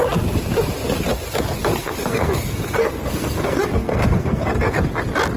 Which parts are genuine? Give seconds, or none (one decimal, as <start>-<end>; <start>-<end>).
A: 0.0-1.7; 4.9-5.4